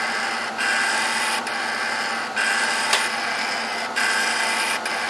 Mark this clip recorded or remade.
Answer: recorded